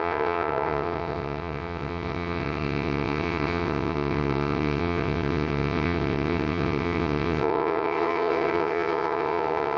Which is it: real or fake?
fake